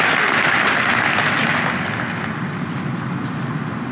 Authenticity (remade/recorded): recorded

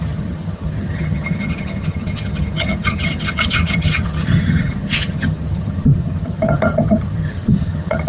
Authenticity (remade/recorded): remade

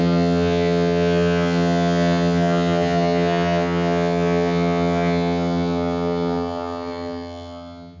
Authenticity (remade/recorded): remade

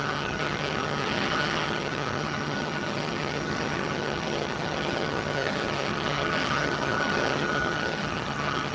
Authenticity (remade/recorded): remade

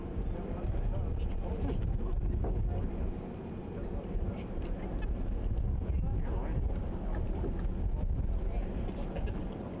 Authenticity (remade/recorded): recorded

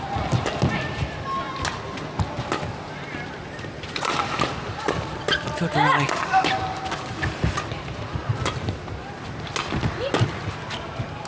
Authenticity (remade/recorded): recorded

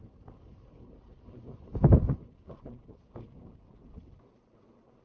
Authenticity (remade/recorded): recorded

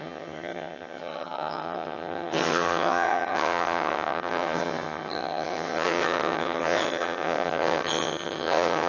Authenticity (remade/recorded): remade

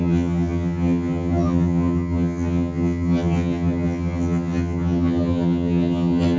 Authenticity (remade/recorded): remade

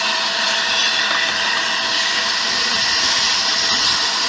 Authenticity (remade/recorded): recorded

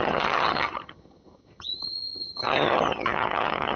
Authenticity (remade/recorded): remade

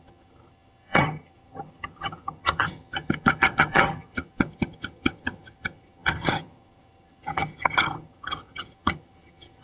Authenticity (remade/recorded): remade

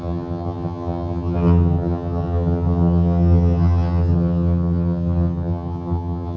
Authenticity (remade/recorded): remade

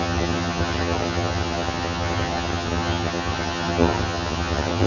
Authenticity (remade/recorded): remade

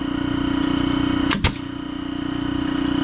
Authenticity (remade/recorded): recorded